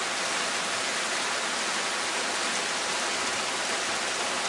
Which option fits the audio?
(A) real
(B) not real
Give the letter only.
A